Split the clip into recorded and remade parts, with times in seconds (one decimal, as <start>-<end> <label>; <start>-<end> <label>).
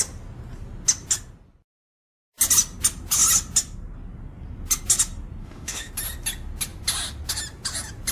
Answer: 0.0-5.4 recorded; 5.4-5.9 remade; 5.9-8.1 recorded